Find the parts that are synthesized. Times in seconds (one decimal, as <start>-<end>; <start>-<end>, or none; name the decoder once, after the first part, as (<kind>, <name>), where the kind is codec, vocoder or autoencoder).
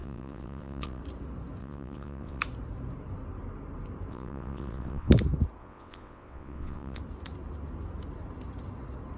0.0-1.0 (vocoder, WaveNeXt); 1.6-2.4; 4.1-5.1; 5.6-7.0